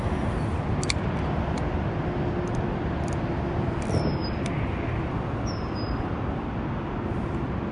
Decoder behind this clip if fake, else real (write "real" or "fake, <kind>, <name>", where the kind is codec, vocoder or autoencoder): real